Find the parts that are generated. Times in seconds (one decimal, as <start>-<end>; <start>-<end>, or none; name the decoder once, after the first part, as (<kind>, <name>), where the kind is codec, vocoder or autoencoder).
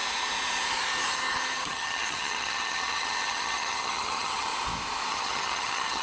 1.7-4.5 (vocoder, HiFi-GAN); 5.1-6.0